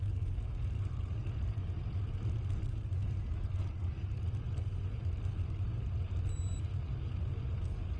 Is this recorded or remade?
recorded